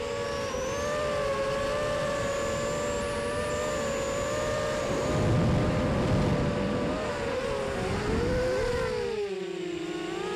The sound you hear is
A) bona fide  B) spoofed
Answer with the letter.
A